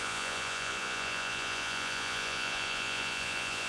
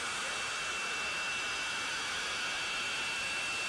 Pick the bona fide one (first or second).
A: second